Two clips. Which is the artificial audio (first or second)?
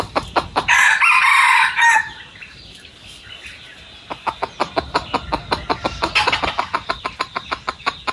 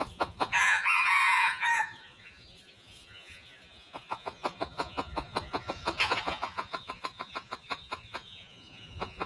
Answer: second